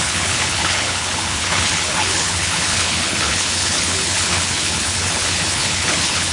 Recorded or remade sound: remade